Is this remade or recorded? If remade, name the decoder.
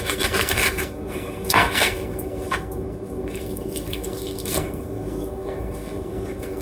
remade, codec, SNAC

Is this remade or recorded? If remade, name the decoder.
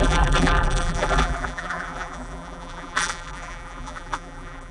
remade, vocoder, BigVGAN v2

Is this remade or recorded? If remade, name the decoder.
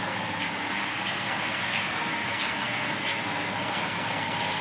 remade, codec, SNAC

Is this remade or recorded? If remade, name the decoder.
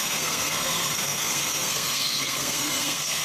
remade, codec, SNAC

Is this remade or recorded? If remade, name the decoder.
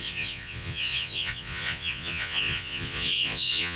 remade, vocoder, Vocos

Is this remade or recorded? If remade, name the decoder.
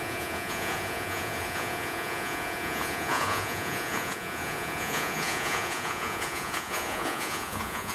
remade, vocoder, Vocos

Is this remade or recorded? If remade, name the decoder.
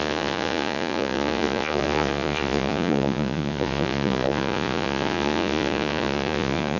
remade, vocoder, Vocos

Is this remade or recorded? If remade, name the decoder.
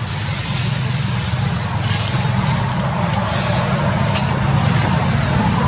recorded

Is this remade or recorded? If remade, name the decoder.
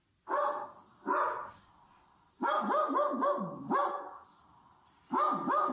recorded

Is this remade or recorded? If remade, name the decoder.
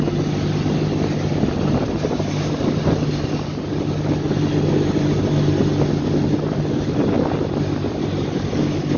recorded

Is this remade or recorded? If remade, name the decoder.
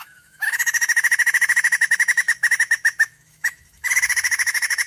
remade, autoencoder, DAC-VAE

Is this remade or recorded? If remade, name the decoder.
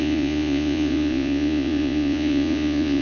remade, vocoder, Vocos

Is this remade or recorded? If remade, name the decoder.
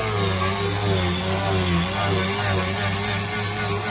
recorded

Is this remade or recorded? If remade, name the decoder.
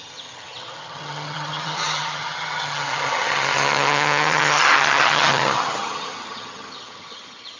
remade, vocoder, HiFi-GAN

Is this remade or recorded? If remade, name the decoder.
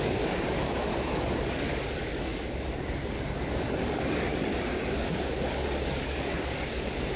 remade, codec, DAC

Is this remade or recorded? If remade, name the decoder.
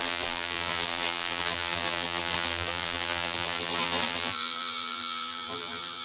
remade, vocoder, BigVGAN v2